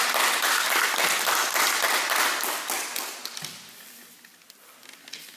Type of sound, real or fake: real